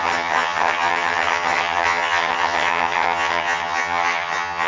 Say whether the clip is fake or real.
fake